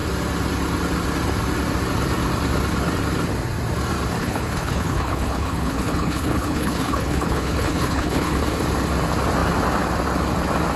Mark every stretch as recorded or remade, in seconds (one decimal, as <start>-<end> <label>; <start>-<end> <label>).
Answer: 0.0-4.2 recorded; 4.2-8.4 remade; 8.4-10.8 recorded